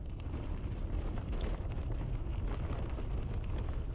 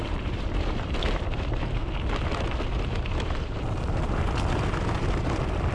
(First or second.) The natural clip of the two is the first